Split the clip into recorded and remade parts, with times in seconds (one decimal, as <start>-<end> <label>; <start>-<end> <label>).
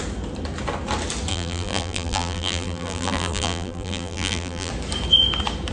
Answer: 0.0-1.3 recorded; 1.3-4.7 remade; 4.7-5.7 recorded